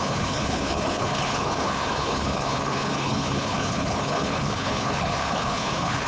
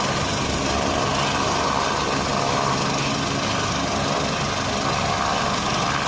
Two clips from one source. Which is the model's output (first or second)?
first